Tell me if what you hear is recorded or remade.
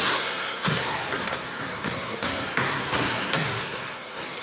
remade